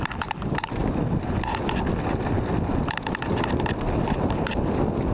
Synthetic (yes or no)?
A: yes